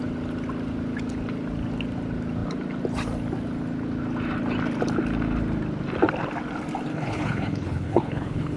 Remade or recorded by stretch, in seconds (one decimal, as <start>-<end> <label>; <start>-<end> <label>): 0.0-6.9 recorded; 6.9-8.6 remade